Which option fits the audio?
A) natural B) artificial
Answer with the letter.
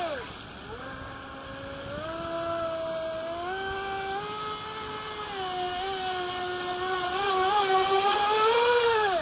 A